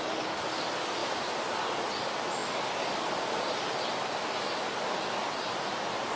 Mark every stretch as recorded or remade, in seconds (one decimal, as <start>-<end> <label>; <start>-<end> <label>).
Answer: 0.0-6.2 recorded